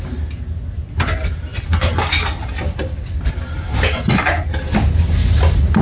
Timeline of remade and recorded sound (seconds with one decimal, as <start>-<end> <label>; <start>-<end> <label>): 0.0-5.8 recorded